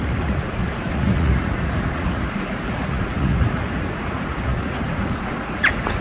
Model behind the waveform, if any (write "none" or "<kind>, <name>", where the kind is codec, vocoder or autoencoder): vocoder, Vocos